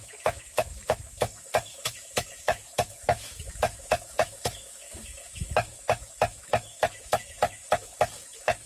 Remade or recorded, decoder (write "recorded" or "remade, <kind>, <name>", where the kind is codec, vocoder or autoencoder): remade, autoencoder, DAC-VAE